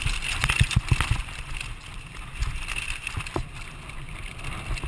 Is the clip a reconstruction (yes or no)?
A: yes